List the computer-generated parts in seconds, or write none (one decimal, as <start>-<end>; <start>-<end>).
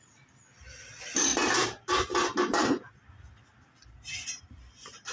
none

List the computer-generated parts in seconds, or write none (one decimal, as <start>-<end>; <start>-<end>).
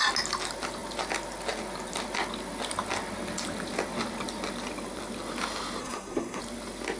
5.8-6.4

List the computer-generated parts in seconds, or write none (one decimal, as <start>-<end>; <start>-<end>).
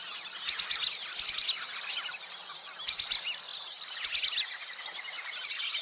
none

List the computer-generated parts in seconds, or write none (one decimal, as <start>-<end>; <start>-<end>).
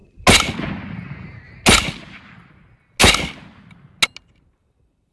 none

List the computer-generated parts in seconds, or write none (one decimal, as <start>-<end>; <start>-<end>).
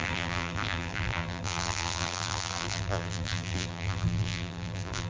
0.0-5.1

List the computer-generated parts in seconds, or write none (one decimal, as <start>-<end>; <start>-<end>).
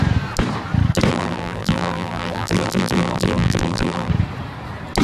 1.1-4.1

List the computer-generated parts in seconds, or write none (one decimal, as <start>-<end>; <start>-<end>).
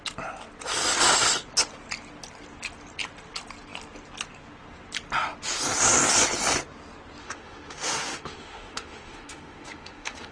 7.2-10.3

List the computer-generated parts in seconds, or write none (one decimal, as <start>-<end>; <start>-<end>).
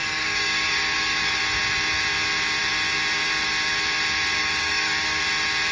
0.0-1.4; 4.4-5.2